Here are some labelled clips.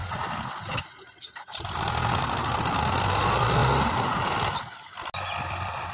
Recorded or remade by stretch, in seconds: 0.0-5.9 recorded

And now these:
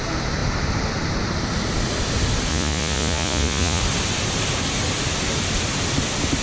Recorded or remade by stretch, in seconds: 0.0-2.5 recorded; 2.5-3.8 remade; 3.8-6.4 recorded

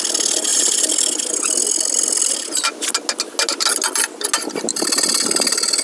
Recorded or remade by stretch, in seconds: 0.0-5.8 recorded

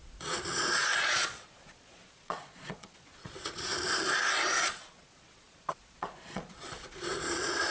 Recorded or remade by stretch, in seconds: 0.0-3.7 remade; 3.7-4.7 recorded; 4.7-7.7 remade

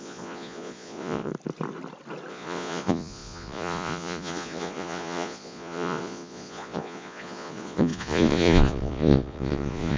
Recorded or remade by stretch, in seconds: 0.0-1.3 remade; 1.3-2.3 recorded; 2.3-10.0 remade

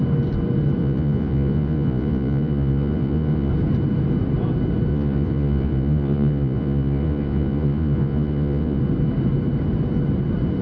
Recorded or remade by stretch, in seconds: 0.0-0.8 recorded; 0.8-3.5 remade; 3.5-4.9 recorded; 4.9-8.8 remade; 8.8-10.6 recorded

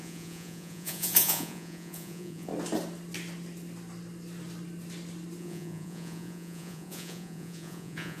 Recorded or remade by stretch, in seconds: 0.0-2.5 remade; 2.5-5.4 recorded; 5.4-8.2 remade